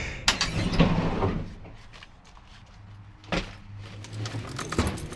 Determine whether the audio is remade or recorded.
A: recorded